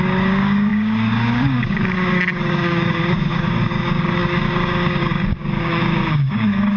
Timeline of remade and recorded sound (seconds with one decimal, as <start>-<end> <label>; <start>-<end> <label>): 0.0-6.8 remade